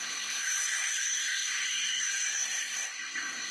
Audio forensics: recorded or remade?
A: remade